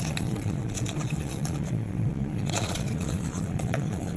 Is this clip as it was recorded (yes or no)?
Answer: no